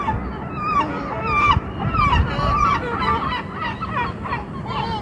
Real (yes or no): no